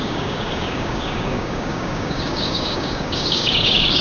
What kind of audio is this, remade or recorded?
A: remade